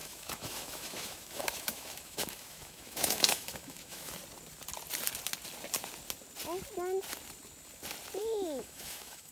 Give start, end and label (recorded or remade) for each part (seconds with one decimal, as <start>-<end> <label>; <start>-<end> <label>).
0.0-4.1 remade; 4.1-8.2 recorded; 8.2-9.3 remade